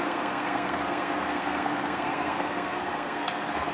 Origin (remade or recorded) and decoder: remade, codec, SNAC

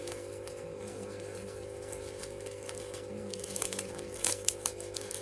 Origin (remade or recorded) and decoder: remade, codec, SNAC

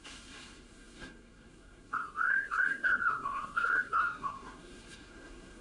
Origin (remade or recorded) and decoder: remade, codec, SNAC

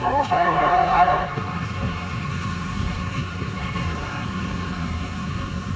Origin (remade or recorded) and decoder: remade, codec, SNAC